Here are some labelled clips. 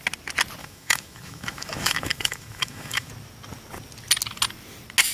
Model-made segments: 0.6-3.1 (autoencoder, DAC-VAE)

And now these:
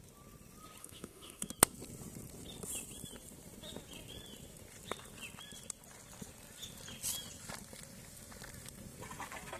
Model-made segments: 0.8-1.5 (autoencoder, DAC-VAE)

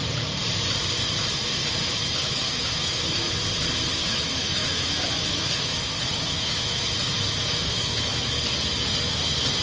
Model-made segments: 2.2-3.4 (autoencoder, DAC-VAE); 3.9-8.3

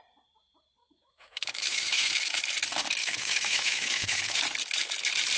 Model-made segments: 0.8-2.4 (autoencoder, DAC-VAE); 3.0-4.4

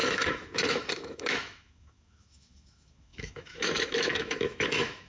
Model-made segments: 0.0-5.1 (autoencoder, DAC-VAE)

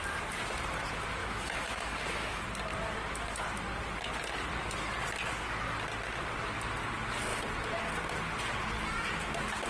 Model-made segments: 1.2-2.4 (autoencoder, DAC-VAE)

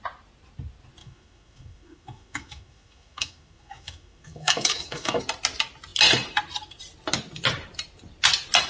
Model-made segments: 1.0-5.2 (autoencoder, DAC-VAE)